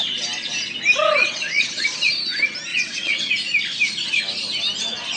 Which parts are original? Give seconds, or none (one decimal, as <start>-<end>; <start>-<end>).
0.0-1.2; 1.8-2.7; 3.3-5.2